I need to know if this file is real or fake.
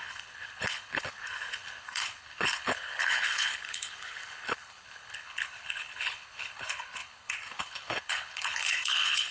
fake